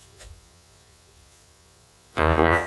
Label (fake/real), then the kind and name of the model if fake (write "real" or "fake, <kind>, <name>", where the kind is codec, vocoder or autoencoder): fake, vocoder, Vocos